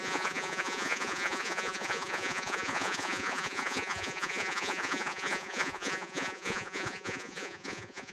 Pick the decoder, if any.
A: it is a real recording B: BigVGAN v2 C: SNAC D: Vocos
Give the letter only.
D